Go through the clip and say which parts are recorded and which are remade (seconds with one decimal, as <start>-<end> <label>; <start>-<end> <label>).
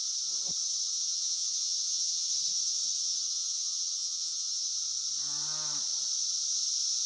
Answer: 0.0-0.6 recorded; 0.6-4.7 remade; 4.7-7.1 recorded